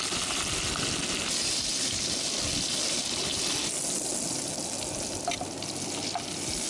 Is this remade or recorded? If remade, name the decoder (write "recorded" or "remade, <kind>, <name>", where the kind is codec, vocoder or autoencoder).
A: recorded